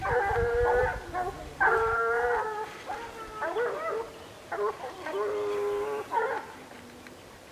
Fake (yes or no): no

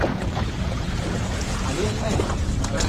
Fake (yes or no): yes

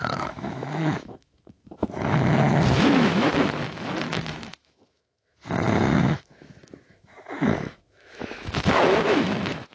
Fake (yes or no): yes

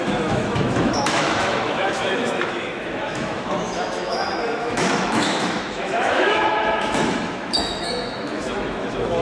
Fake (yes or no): yes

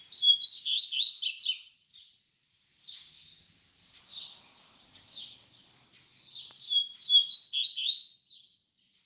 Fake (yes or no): no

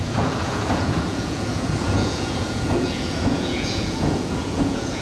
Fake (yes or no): yes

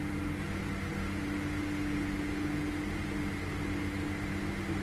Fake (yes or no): no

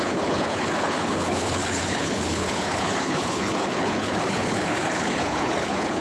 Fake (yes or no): yes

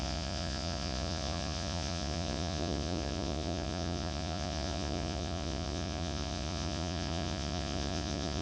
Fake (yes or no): yes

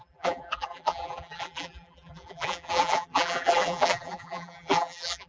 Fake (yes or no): yes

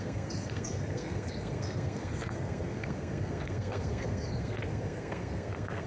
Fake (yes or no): yes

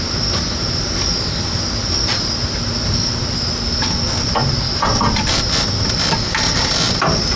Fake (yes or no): no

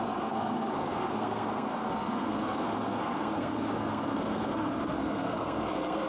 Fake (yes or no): yes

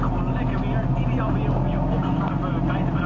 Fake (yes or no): no